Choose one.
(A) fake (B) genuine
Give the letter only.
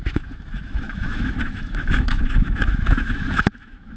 A